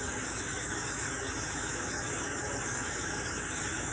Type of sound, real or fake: fake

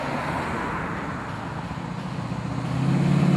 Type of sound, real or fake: real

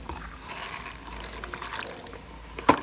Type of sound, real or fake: real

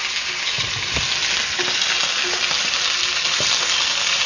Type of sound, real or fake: real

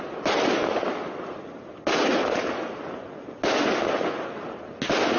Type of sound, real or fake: real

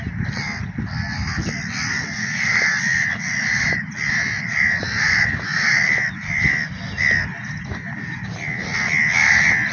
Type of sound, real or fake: real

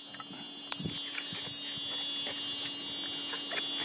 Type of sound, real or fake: real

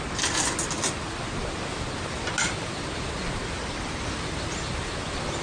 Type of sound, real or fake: real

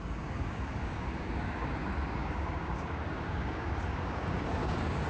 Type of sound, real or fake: fake